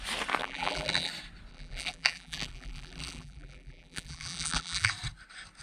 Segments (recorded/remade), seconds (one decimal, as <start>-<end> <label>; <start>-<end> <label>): 0.0-0.4 recorded; 0.4-1.1 remade; 1.1-1.5 recorded; 1.5-4.9 remade; 4.9-5.6 recorded